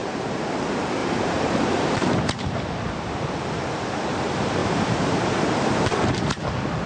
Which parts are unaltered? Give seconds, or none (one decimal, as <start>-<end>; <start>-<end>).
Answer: 0.6-1.0; 2.1-4.6; 5.2-6.9